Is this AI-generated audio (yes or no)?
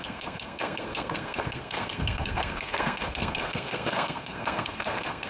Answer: yes